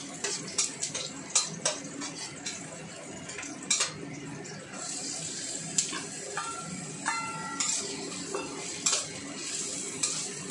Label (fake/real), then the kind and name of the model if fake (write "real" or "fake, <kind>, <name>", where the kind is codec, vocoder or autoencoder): real